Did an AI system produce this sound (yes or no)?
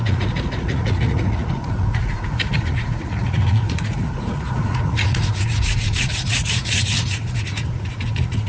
yes